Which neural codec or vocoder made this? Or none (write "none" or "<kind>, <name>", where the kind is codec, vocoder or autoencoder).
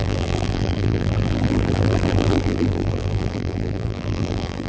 vocoder, BigVGAN v2